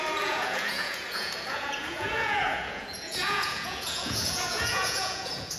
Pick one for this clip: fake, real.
fake